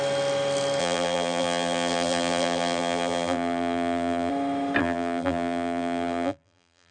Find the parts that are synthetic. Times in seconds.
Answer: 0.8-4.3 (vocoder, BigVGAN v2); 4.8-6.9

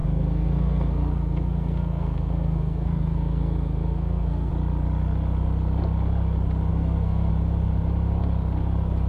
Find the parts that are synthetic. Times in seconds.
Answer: 0.0-4.5 (codec, SNAC); 6.7-7.3

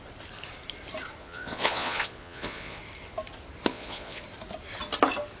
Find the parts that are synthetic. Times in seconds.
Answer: 1.2-2.8 (vocoder, Vocos); 3.7-4.2